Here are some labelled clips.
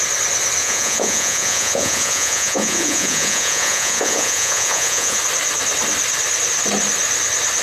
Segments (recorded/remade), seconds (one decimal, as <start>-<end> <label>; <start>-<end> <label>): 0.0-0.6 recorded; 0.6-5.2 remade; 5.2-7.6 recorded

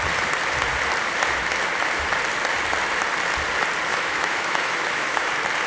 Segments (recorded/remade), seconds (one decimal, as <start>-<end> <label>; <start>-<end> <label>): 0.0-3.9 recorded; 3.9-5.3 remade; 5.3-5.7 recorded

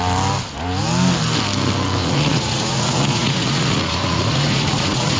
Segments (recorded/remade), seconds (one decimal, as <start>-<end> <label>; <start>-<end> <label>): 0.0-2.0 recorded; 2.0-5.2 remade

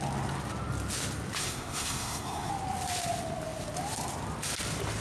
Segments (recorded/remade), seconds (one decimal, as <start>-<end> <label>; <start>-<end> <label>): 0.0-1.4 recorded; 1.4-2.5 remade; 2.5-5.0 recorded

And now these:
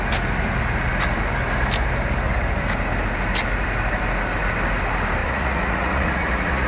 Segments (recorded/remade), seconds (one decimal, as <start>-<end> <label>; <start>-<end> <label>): 0.0-5.2 recorded; 5.2-6.7 remade

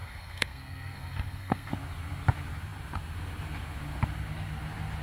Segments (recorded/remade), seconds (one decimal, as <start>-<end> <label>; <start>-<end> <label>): 0.0-1.7 remade; 1.7-5.0 recorded

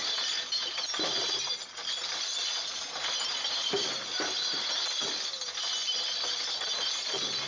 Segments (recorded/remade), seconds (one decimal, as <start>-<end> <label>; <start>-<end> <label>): 0.0-7.5 recorded